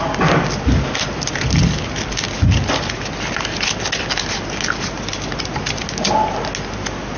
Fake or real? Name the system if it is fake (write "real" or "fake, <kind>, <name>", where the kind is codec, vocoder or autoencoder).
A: real